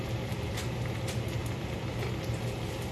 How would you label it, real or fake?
real